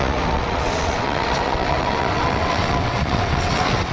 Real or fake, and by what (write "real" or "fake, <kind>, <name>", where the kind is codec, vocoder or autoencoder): fake, vocoder, WaveNeXt